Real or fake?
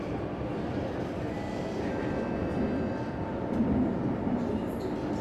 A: real